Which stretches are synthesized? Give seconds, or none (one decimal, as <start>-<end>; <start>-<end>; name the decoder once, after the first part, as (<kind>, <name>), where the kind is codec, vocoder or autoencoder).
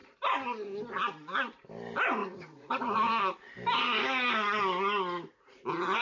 2.2-3.1 (vocoder, Vocos)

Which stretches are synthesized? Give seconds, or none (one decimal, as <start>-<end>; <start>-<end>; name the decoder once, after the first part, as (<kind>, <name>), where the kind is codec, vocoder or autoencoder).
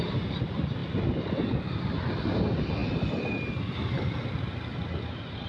none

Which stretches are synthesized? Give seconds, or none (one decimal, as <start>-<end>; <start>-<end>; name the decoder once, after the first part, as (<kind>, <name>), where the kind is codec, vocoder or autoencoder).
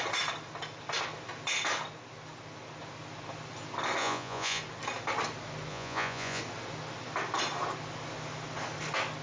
4.0-4.6 (vocoder, Vocos); 5.7-6.4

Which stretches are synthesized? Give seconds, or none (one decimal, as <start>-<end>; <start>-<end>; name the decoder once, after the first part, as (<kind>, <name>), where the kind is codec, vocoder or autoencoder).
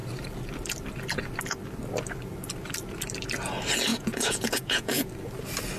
3.9-5.1 (vocoder, Vocos)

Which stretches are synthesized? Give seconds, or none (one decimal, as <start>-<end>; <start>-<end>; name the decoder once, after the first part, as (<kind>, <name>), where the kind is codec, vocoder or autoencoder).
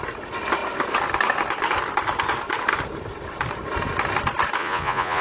4.6-5.2 (vocoder, Vocos)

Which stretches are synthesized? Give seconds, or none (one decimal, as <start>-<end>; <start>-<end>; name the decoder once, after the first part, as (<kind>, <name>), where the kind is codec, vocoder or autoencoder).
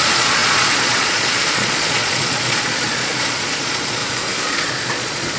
0.0-4.0 (vocoder, Vocos); 4.5-5.4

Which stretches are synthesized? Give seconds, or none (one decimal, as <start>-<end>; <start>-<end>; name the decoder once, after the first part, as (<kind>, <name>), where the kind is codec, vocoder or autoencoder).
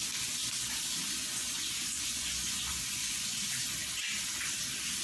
1.2-3.4 (vocoder, Vocos)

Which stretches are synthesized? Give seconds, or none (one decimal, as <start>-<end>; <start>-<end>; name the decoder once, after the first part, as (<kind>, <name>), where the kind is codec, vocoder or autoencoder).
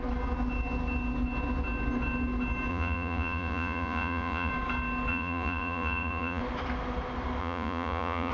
2.7-4.5 (vocoder, Vocos); 5.1-6.4; 7.4-8.3